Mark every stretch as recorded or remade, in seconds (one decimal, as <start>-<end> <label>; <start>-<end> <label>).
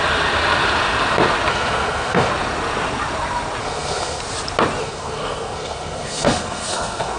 0.0-1.5 recorded; 1.5-2.3 remade; 2.3-3.6 recorded; 3.6-4.2 remade; 4.2-4.8 recorded; 4.8-7.2 remade